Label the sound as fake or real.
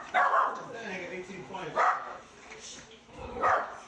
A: fake